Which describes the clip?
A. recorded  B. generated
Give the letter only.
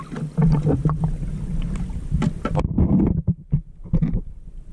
A